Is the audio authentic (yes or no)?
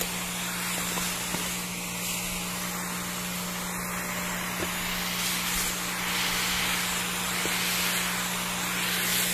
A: yes